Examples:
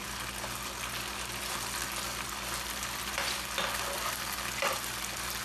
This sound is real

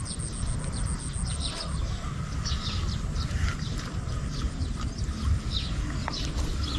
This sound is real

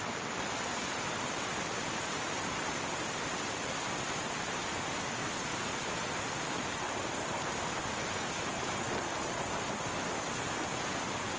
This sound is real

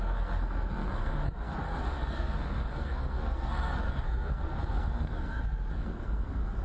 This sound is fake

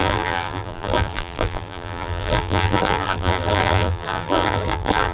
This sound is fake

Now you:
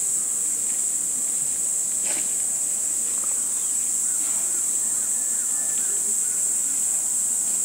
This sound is real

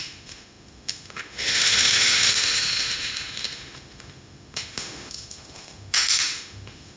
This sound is fake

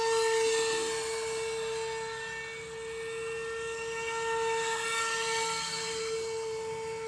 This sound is real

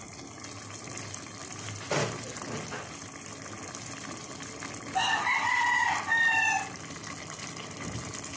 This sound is real